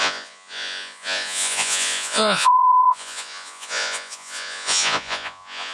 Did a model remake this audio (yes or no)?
yes